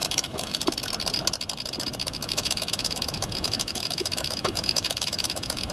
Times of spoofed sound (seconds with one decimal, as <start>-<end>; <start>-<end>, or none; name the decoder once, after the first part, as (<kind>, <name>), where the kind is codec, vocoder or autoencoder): 0.0-0.6 (autoencoder, DAC-VAE); 2.0-5.7